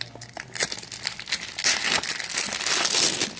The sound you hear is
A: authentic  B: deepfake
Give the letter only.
A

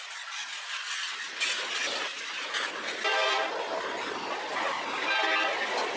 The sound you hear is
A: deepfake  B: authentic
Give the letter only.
B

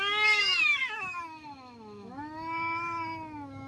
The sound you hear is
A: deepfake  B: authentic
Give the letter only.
A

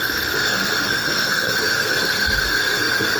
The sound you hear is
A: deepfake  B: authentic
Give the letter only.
A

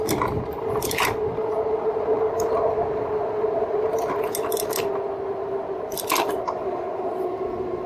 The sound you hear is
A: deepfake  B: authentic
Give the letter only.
B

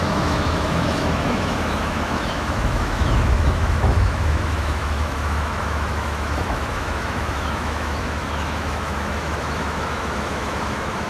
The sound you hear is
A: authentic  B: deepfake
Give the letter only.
B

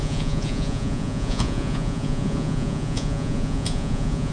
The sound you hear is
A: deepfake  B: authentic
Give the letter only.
A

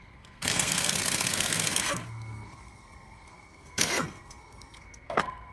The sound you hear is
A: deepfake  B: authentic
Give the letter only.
A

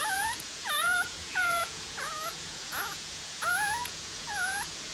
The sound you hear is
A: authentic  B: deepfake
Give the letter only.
B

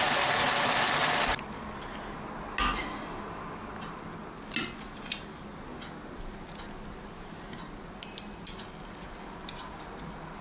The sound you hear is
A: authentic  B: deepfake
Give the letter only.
A